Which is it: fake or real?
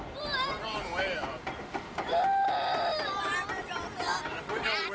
fake